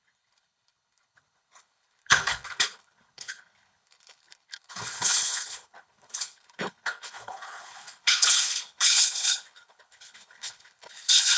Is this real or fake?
fake